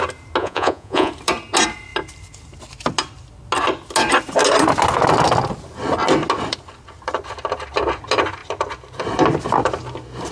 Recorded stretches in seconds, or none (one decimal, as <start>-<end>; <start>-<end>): 0.0-0.4; 1.1-10.3